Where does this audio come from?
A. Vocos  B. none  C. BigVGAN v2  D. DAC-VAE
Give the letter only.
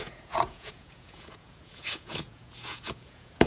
A